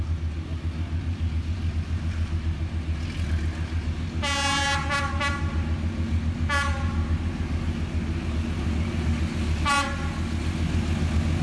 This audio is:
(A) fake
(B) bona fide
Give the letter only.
B